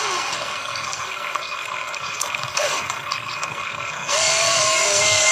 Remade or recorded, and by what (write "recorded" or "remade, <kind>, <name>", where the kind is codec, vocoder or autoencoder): remade, codec, SNAC